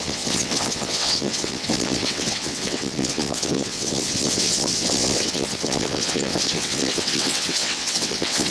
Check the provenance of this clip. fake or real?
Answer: fake